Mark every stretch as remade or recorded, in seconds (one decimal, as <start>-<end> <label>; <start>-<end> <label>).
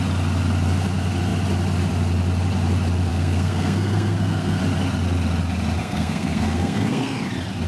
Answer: 0.0-3.1 recorded; 3.1-4.6 remade; 4.6-5.8 recorded; 5.8-7.3 remade; 7.3-7.7 recorded